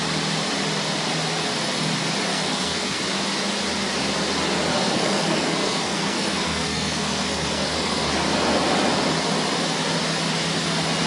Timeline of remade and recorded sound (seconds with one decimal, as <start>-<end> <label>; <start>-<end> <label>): 0.0-2.3 recorded; 2.3-3.0 remade; 3.0-4.7 recorded; 4.7-8.1 remade; 8.1-11.1 recorded